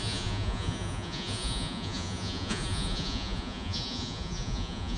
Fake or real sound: fake